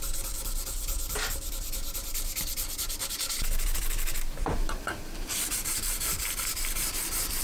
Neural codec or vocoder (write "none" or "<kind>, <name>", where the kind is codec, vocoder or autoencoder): vocoder, BigVGAN v2